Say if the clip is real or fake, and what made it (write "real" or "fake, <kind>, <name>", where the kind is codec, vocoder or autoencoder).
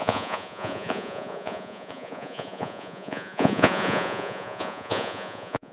fake, vocoder, Vocos